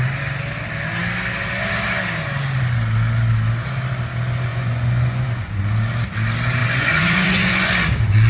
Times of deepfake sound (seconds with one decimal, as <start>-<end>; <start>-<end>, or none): 4.5-5.6; 6.6-7.7